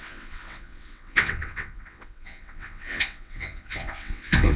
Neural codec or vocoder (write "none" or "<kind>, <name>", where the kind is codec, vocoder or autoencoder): vocoder, WaveNeXt